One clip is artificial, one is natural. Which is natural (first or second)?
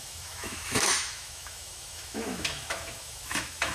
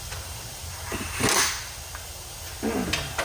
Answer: second